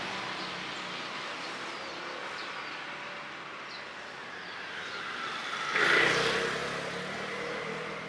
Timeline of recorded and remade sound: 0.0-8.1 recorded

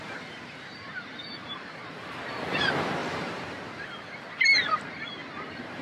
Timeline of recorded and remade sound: 0.0-1.4 recorded; 1.4-2.3 remade; 2.3-3.0 recorded; 3.0-3.8 remade; 3.8-5.2 recorded; 5.2-5.8 remade